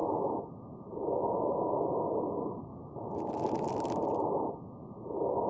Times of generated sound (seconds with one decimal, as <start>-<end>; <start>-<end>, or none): 0.0-0.9; 2.7-3.3

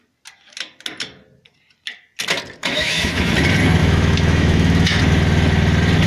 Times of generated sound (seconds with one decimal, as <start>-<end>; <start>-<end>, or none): 2.6-3.3; 3.8-5.0

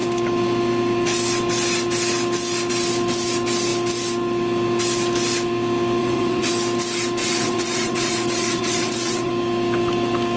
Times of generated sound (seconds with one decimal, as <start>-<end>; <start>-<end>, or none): 6.0-6.5; 7.2-9.3

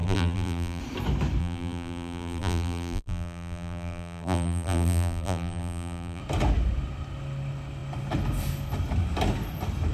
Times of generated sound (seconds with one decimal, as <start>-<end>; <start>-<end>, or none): 0.0-0.8; 1.4-6.2